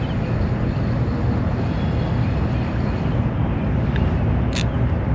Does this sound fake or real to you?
real